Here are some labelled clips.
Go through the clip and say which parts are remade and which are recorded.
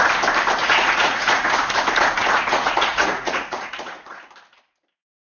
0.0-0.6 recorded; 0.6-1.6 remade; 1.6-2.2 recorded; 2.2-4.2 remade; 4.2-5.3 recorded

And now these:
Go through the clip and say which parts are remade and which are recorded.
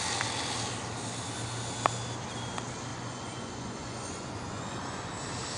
0.0-2.9 recorded; 2.9-5.1 remade; 5.1-5.6 recorded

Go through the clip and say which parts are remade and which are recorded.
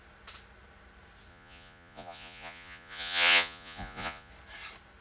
0.0-1.3 recorded; 1.3-4.3 remade; 4.3-5.0 recorded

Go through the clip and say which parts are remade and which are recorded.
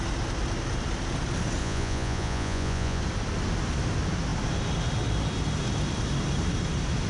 0.0-1.6 recorded; 1.6-3.0 remade; 3.0-7.1 recorded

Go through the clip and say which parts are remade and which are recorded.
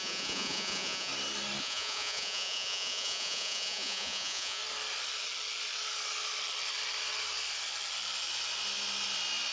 0.0-1.1 remade; 1.1-1.6 recorded; 1.6-4.6 remade; 4.6-9.5 recorded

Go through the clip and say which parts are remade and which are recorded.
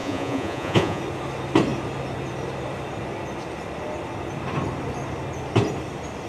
0.0-1.0 remade; 1.0-6.3 recorded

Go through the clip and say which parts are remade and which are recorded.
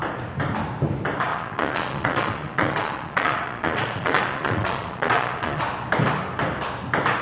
0.0-1.3 recorded; 1.3-5.6 remade; 5.6-7.2 recorded